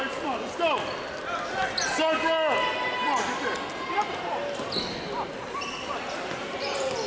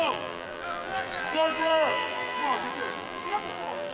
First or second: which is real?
first